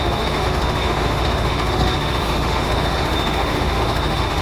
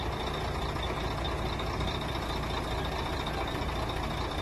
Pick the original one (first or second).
second